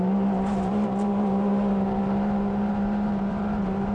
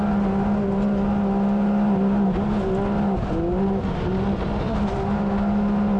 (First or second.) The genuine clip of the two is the second